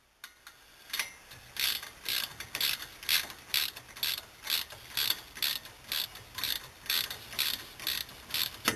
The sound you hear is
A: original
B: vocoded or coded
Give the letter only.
A